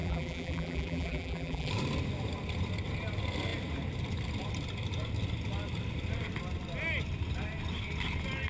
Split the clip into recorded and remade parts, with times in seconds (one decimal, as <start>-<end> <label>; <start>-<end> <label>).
0.0-1.7 remade; 1.7-8.5 recorded